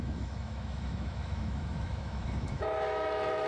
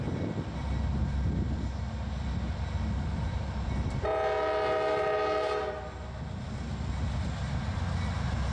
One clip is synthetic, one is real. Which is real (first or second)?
second